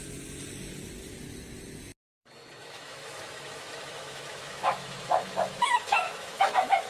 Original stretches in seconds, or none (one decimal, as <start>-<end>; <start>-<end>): 0.0-2.6